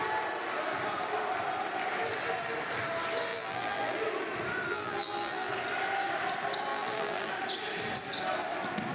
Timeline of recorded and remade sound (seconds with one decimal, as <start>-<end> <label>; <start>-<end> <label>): 0.0-3.3 recorded; 3.3-4.0 remade; 4.0-4.7 recorded; 4.7-5.5 remade; 5.5-6.7 recorded; 6.7-7.3 remade; 7.3-8.9 recorded